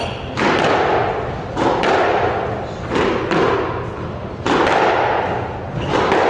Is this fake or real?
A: real